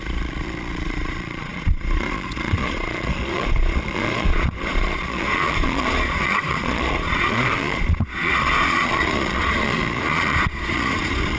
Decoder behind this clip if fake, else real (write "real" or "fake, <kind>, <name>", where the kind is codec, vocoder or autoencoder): fake, vocoder, Vocos